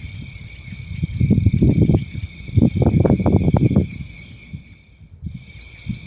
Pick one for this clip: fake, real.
real